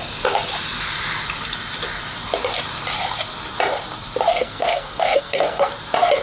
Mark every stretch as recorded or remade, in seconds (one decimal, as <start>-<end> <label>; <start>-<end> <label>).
0.0-4.3 recorded; 4.3-5.7 remade; 5.7-6.2 recorded